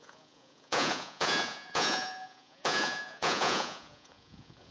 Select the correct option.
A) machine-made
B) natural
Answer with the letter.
A